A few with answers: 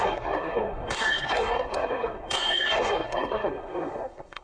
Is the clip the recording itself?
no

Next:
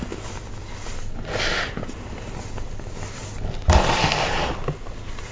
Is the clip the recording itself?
yes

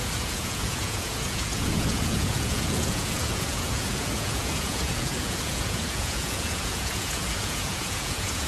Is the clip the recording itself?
no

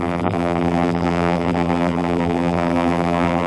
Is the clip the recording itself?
no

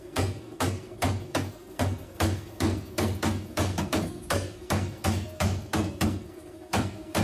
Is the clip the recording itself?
no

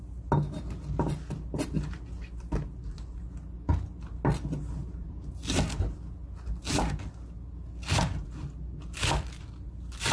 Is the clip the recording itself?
yes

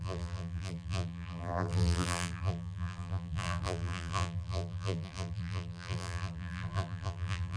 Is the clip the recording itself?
no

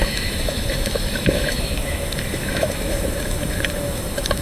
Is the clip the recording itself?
no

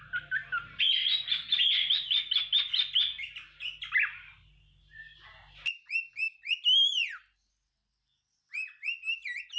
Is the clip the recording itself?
yes